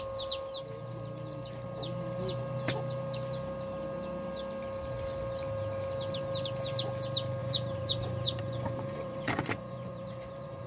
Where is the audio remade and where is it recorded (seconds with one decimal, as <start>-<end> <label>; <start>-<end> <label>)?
0.0-7.4 recorded; 7.4-10.7 remade